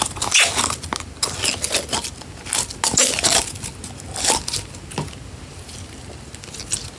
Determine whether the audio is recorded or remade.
recorded